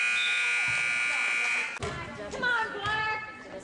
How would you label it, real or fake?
real